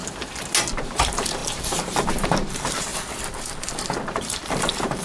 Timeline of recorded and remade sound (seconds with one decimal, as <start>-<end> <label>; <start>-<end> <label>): 0.0-0.7 recorded; 0.7-2.9 remade; 2.9-4.1 recorded; 4.1-5.0 remade